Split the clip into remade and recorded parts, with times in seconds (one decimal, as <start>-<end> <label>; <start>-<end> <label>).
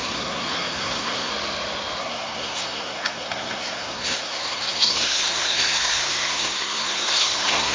0.0-1.3 remade; 1.3-2.0 recorded; 2.0-7.7 remade